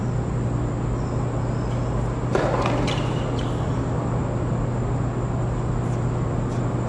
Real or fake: real